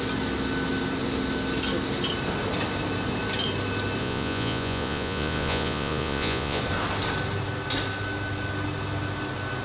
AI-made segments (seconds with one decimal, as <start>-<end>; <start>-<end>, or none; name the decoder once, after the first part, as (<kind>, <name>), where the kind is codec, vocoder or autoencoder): 4.0-6.6 (vocoder, Vocos)